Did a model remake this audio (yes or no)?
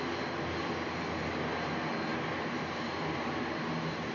no